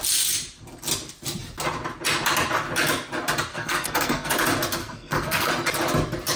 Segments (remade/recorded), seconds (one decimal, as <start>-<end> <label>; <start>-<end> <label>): 0.0-3.5 recorded; 3.5-4.3 remade; 4.3-4.8 recorded; 4.8-5.5 remade; 5.5-6.4 recorded